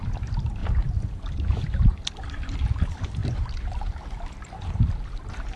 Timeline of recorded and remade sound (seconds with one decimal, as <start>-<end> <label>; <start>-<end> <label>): 0.0-3.2 remade; 3.2-4.7 recorded; 4.7-5.6 remade